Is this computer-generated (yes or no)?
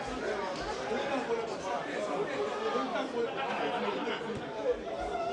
no